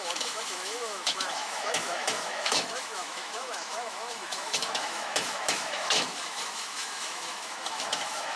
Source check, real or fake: fake